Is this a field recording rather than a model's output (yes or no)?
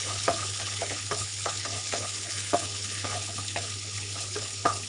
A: no